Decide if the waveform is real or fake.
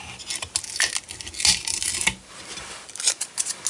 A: real